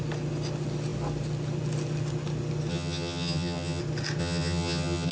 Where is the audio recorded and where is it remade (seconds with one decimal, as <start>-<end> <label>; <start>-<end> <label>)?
0.0-2.7 recorded; 2.7-3.8 remade; 3.8-4.2 recorded; 4.2-5.1 remade